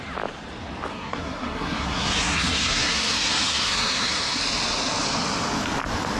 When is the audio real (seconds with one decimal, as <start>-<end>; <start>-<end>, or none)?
0.0-0.9; 4.4-6.2